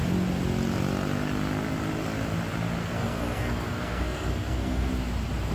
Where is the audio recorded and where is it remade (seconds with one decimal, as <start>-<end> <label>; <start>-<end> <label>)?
0.0-2.8 recorded; 2.8-4.9 remade; 4.9-5.5 recorded